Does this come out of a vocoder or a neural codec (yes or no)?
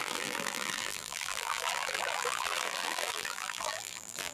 yes